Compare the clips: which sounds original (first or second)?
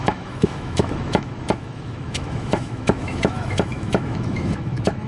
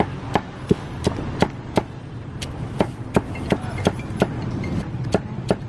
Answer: second